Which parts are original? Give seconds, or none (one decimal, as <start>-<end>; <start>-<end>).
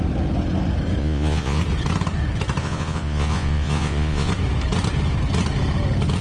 0.0-1.0; 1.6-2.6; 4.3-6.2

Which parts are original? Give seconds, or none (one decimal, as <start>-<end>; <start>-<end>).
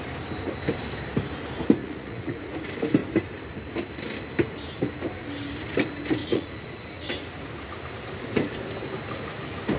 0.0-1.8; 2.5-6.2; 7.1-9.8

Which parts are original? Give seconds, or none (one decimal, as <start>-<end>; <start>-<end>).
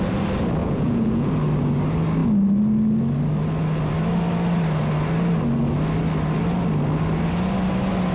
0.0-0.6; 1.3-8.1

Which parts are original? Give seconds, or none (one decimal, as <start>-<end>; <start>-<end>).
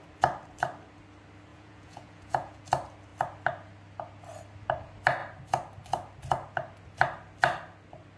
0.0-1.5; 2.6-8.2